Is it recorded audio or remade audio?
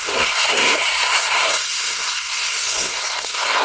remade